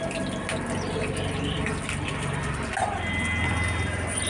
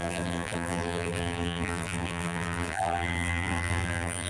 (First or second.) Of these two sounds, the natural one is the first